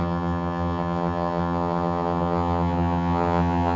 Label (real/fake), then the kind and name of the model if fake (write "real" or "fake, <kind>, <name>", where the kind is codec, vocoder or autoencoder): fake, vocoder, HiFi-GAN